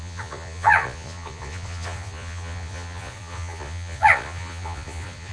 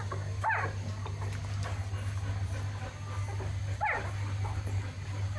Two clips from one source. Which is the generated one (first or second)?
first